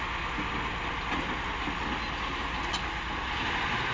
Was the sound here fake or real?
real